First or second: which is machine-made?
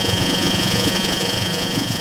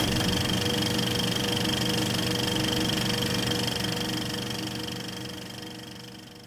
first